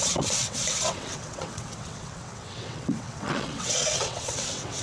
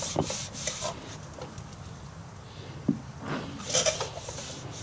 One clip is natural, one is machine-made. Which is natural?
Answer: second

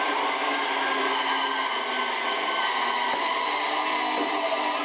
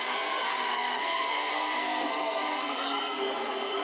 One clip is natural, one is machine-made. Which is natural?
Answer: first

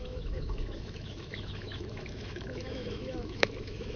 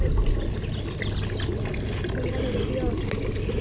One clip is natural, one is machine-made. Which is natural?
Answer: second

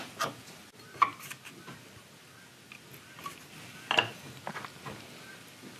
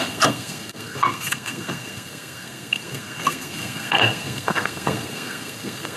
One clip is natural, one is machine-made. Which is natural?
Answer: first